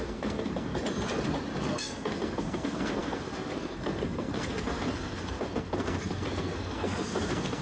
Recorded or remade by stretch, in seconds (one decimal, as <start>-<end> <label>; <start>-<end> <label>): 0.0-0.7 remade; 0.7-1.6 recorded; 1.6-7.6 remade